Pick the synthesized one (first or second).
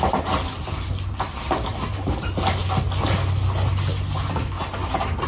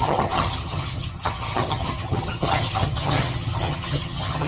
second